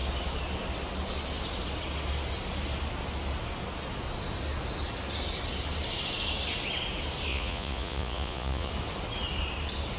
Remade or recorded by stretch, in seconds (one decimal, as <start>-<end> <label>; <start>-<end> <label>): 0.0-7.3 recorded; 7.3-8.7 remade; 8.7-10.0 recorded